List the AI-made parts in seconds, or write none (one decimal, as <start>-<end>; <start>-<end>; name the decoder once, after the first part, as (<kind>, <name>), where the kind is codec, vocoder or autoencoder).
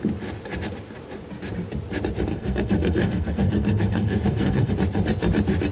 2.3-4.7 (codec, SNAC)